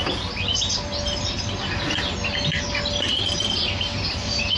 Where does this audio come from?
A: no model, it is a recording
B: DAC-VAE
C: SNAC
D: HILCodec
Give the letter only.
A